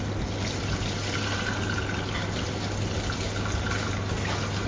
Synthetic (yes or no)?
no